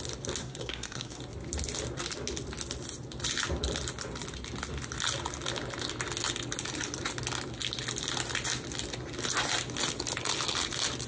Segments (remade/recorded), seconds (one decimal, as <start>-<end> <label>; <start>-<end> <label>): 0.0-0.4 recorded; 0.4-1.2 remade; 1.2-11.1 recorded